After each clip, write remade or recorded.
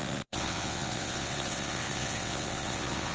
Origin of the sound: remade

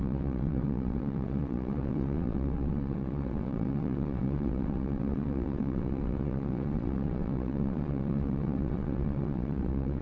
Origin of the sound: remade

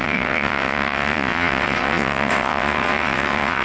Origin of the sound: remade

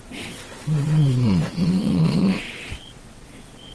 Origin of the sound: remade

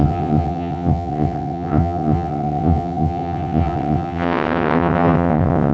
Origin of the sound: remade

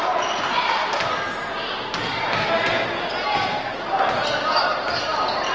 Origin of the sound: recorded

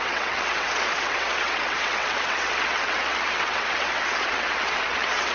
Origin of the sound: remade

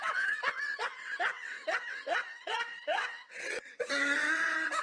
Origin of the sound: remade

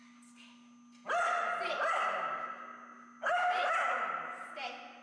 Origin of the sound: recorded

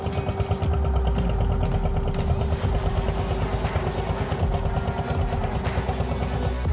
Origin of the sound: recorded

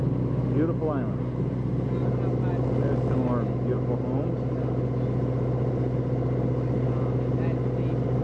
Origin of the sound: recorded